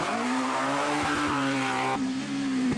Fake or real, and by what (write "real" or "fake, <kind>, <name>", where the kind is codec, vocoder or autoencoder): fake, vocoder, BigVGAN v2